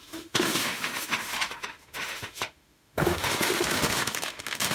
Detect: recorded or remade remade